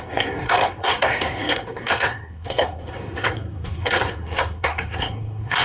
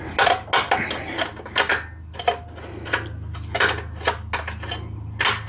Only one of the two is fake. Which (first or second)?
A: first